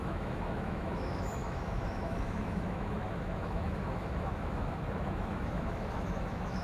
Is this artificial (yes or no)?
yes